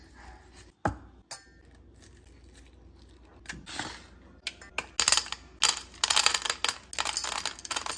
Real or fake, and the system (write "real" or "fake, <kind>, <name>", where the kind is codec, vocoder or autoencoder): real